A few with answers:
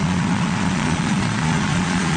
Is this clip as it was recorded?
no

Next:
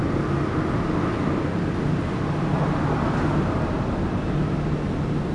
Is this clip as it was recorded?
yes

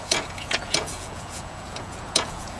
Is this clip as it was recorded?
no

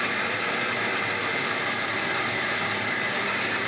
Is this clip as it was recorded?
yes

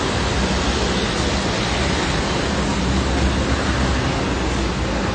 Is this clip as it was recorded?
yes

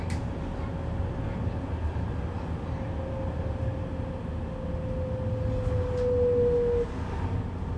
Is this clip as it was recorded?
yes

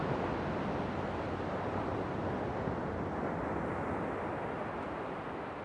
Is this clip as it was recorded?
yes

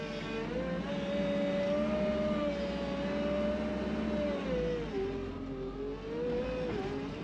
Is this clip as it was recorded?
yes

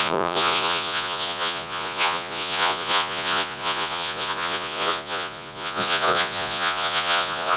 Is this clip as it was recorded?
no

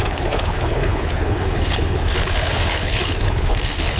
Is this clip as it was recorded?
no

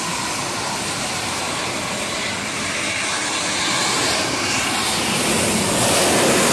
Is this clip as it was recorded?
yes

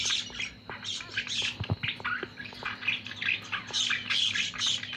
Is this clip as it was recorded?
yes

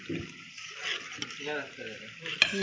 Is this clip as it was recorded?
yes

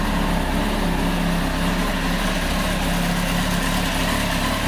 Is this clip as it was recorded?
yes